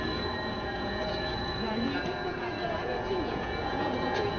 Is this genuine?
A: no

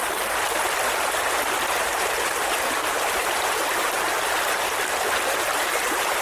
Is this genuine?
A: no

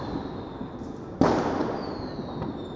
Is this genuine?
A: yes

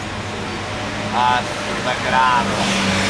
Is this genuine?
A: yes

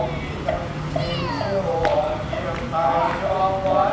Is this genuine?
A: yes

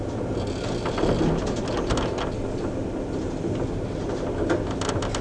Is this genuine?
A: yes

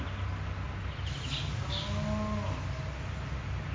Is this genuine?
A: yes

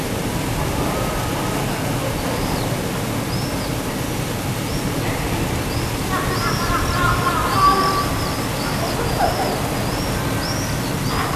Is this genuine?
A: yes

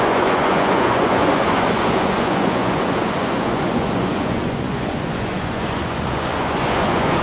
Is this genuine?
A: no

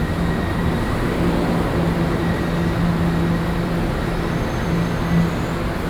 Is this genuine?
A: yes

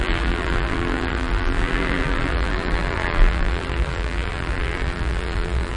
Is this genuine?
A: no